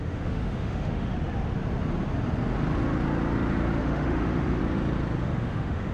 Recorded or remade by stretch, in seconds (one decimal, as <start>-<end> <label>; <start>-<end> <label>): 0.0-1.1 remade; 1.1-3.8 recorded; 3.8-4.6 remade; 4.6-5.2 recorded; 5.2-5.9 remade